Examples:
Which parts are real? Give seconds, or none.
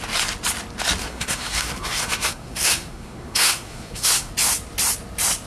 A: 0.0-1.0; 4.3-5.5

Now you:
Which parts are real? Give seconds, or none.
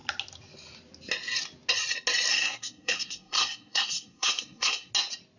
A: 0.0-2.3; 4.9-5.4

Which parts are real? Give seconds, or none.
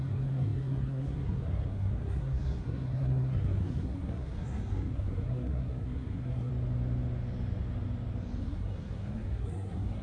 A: 6.5-8.4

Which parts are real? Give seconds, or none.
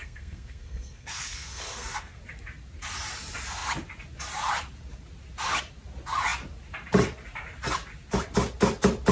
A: 2.2-9.1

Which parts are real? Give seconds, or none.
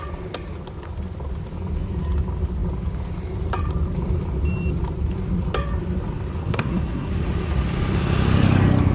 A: 0.0-6.4; 7.1-8.9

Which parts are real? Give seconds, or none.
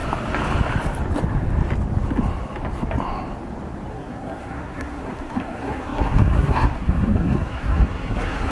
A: 0.0-3.9